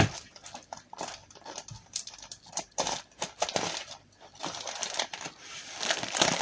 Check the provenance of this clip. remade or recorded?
remade